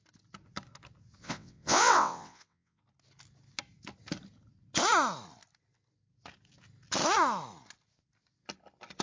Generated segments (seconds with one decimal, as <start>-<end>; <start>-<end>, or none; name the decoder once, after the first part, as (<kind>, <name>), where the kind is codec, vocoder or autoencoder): 1.2-2.8 (vocoder, WaveNeXt)